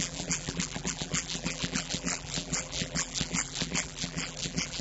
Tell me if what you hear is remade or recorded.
remade